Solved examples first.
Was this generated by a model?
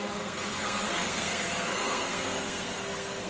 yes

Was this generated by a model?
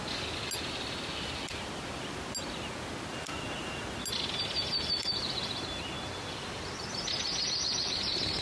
no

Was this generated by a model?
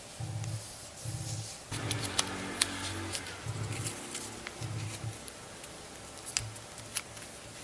no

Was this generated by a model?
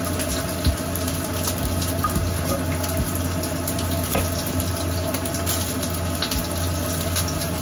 no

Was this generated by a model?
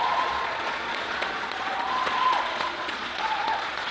yes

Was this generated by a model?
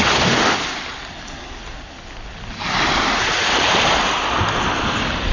no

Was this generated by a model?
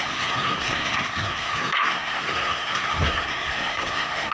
yes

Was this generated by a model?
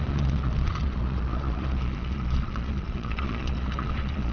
yes